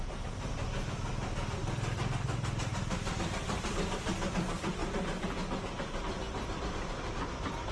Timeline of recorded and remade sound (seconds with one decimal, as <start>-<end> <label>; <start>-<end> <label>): 0.0-2.7 remade; 2.7-3.2 recorded; 3.2-4.8 remade; 4.8-7.1 recorded; 7.1-7.7 remade